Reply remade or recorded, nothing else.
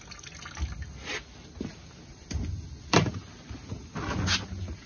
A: recorded